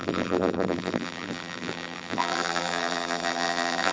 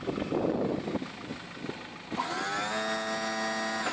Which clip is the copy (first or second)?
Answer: first